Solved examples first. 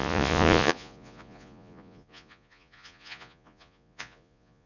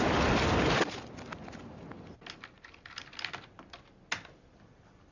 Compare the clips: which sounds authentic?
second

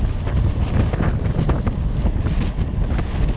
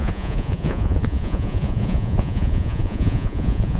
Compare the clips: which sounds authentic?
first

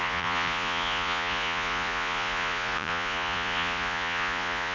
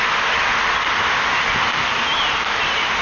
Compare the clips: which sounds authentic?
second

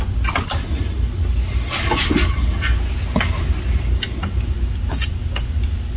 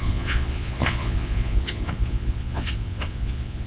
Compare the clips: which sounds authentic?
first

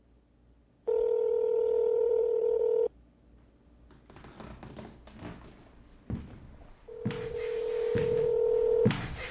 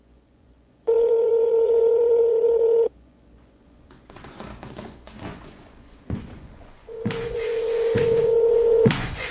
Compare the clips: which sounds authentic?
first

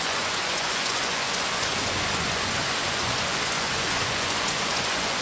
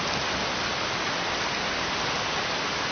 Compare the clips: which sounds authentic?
second